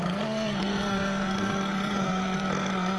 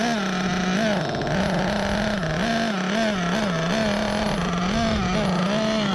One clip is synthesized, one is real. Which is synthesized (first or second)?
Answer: first